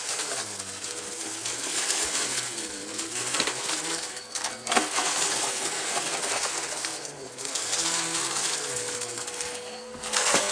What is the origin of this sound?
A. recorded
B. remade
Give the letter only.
B